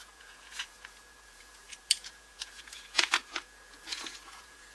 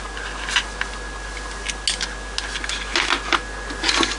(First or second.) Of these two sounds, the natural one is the second